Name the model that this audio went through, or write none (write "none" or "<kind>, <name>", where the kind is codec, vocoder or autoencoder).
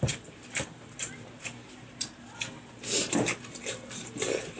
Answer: vocoder, BigVGAN v2